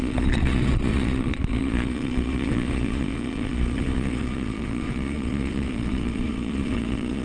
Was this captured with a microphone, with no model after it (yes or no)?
no